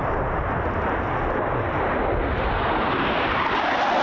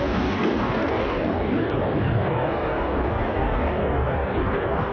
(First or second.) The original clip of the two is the first